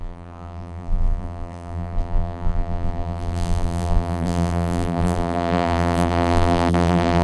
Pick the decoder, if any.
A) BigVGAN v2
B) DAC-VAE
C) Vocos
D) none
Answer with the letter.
A